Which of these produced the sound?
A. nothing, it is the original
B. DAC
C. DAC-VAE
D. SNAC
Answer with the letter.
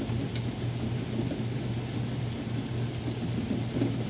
A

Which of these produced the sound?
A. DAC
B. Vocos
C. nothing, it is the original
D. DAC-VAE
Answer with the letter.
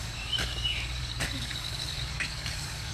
A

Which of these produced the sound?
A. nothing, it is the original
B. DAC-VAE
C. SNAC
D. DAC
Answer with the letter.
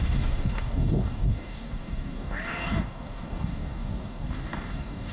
D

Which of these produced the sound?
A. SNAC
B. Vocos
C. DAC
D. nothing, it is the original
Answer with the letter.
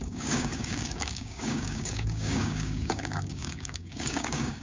C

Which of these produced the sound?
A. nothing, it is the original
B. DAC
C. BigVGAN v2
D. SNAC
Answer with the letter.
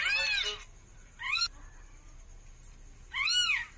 A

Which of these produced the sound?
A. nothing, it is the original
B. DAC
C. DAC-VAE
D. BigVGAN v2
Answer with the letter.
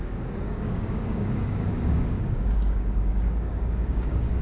B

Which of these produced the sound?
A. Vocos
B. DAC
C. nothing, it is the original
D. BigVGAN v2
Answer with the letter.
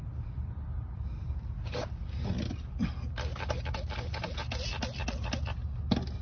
C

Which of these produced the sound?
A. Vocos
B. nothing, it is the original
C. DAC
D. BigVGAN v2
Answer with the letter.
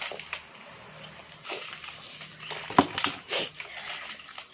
B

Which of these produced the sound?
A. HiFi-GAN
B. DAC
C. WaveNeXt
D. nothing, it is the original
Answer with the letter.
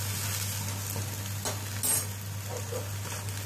D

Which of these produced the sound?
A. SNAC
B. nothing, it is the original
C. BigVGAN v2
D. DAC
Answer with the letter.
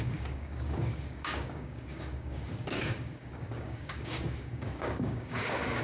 D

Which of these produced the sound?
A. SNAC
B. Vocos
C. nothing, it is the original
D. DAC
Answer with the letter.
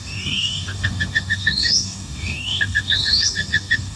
D